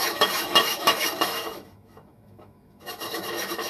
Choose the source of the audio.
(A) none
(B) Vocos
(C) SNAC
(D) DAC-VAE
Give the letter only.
D